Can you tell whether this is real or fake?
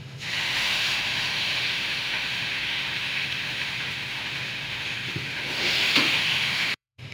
fake